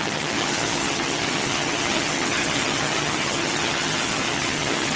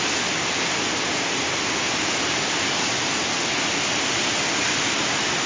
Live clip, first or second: second